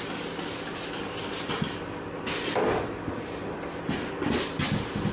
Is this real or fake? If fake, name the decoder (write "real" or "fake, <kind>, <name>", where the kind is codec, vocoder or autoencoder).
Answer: real